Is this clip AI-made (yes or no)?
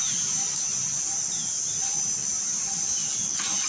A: no